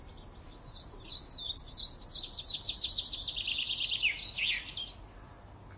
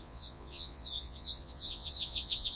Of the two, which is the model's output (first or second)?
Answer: second